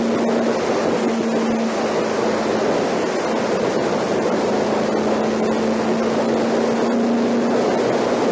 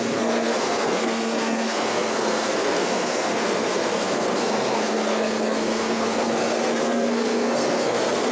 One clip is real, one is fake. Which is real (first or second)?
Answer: first